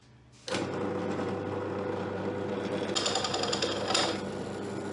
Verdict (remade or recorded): recorded